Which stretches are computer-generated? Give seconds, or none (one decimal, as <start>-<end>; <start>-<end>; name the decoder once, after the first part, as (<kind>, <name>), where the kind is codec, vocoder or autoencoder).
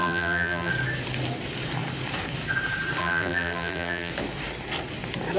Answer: 0.0-0.7 (vocoder, BigVGAN v2); 3.0-4.1